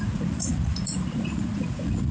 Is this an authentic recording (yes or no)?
no